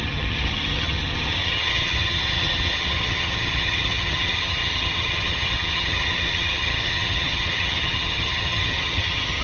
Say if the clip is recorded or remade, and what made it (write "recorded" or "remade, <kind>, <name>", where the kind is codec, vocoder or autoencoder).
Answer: remade, vocoder, HiFi-GAN